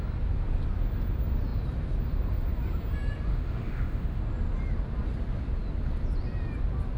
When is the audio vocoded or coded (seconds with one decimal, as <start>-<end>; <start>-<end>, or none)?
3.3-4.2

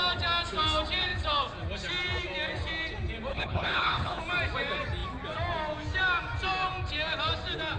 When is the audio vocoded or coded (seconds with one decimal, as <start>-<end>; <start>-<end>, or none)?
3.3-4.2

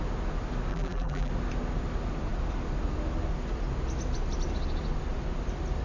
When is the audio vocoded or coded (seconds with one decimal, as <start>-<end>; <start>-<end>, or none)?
0.7-1.3